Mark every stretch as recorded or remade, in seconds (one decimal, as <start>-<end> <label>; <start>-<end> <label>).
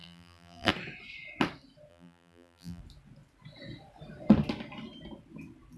0.0-0.7 remade; 0.7-1.9 recorded; 1.9-2.8 remade; 2.8-5.8 recorded